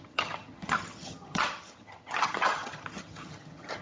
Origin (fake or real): fake